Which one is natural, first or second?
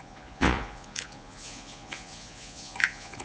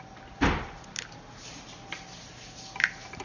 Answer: second